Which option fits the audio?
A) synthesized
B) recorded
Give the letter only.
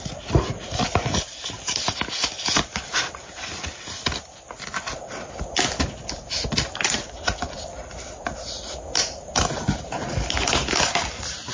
B